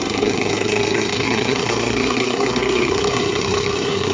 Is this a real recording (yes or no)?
no